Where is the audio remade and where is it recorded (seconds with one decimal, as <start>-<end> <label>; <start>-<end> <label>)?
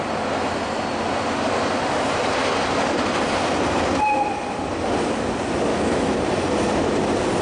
0.0-5.7 recorded; 5.7-6.2 remade; 6.2-7.4 recorded